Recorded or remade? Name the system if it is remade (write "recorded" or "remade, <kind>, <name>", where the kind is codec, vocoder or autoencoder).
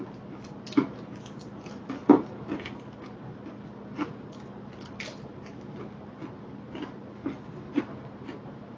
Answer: recorded